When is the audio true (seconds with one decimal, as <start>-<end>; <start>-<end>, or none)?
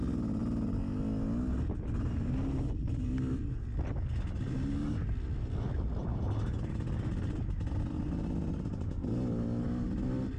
0.0-10.4